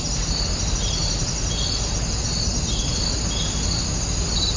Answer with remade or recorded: recorded